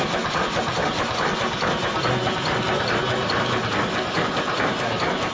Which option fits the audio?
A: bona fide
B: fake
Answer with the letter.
A